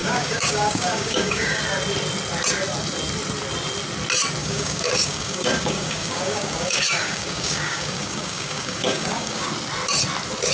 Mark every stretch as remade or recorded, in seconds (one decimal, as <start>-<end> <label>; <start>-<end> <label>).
0.0-1.6 remade; 1.6-4.4 recorded; 4.4-9.5 remade; 9.5-10.5 recorded